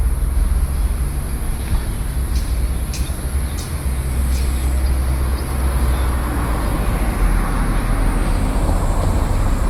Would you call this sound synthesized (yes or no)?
no